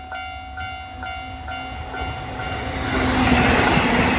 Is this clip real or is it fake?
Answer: real